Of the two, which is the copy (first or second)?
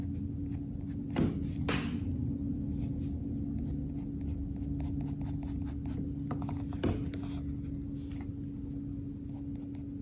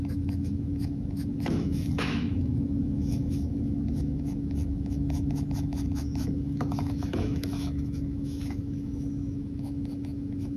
second